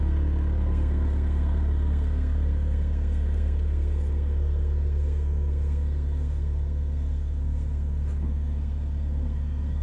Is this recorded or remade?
remade